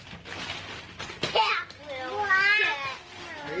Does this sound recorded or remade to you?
recorded